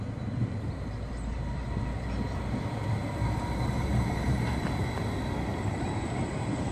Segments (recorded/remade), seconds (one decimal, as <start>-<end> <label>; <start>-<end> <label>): 0.0-3.0 recorded; 3.0-5.0 remade; 5.0-5.5 recorded; 5.5-6.7 remade